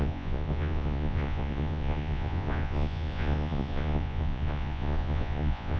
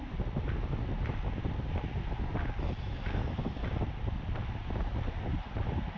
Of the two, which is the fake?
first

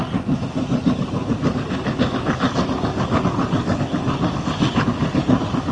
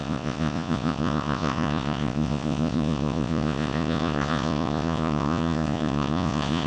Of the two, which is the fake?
second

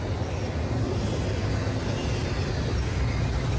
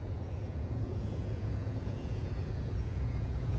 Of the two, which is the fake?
second